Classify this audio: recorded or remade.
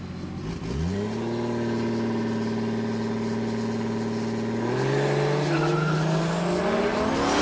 recorded